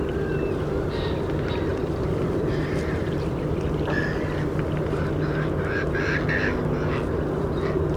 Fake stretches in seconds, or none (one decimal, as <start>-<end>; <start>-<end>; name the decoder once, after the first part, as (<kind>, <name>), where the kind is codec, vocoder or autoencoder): 1.7-3.7 (vocoder, BigVGAN v2)